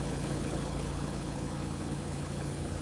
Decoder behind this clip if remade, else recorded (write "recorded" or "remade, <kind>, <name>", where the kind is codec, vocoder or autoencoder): remade, codec, HILCodec